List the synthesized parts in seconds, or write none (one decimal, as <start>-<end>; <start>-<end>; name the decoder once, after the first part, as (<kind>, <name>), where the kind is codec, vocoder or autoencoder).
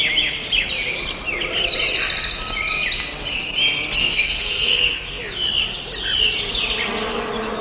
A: 4.0-5.2 (codec, SNAC)